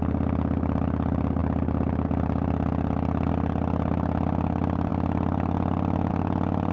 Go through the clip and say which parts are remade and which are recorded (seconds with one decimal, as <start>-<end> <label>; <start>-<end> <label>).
0.0-6.7 recorded